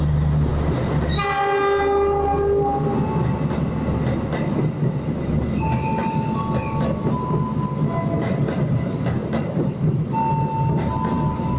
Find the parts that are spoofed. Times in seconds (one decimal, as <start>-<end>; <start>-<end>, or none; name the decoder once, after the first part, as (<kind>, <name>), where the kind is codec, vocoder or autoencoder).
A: none